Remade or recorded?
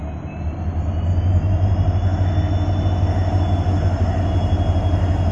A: recorded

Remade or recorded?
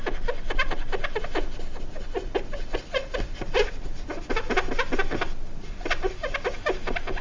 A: recorded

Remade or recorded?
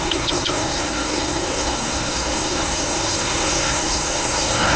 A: remade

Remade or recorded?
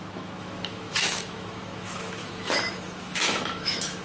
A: remade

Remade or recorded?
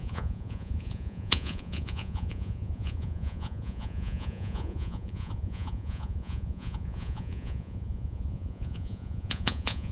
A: remade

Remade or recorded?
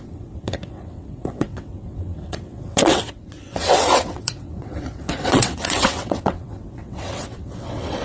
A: remade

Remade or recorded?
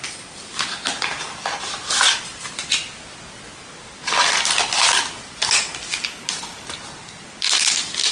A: recorded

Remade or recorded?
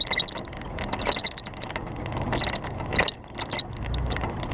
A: recorded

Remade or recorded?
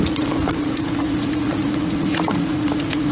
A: remade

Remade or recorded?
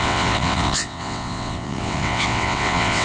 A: remade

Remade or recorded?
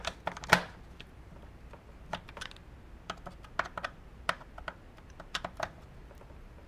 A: recorded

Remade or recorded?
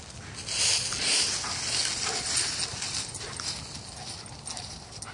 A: recorded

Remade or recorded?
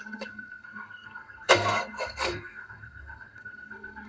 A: remade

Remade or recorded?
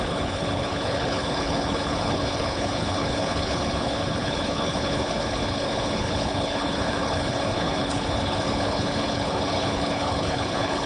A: remade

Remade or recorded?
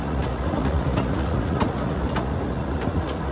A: remade